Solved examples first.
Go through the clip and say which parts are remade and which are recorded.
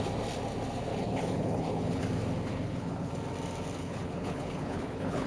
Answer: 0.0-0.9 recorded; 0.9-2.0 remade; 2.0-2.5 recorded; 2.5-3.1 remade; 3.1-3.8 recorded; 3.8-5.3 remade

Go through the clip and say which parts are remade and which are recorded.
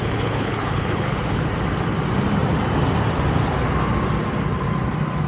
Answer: 0.0-1.5 remade; 1.5-5.3 recorded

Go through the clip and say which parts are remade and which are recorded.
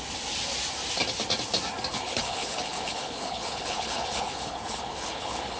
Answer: 0.0-1.9 recorded; 1.9-5.6 remade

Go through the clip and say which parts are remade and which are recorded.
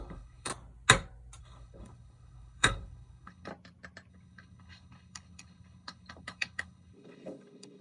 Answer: 0.0-0.5 remade; 0.5-1.4 recorded; 1.4-3.5 remade; 3.5-4.1 recorded; 4.1-7.8 remade